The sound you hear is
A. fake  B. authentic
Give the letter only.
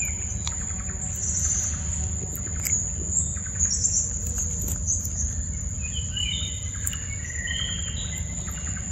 B